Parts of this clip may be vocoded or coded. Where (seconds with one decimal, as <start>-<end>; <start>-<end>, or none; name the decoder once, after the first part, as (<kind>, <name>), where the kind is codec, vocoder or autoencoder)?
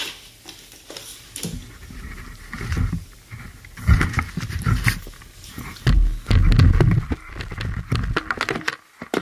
none